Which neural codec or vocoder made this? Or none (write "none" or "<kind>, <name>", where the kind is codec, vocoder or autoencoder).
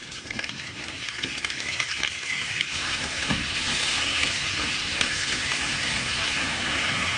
codec, SNAC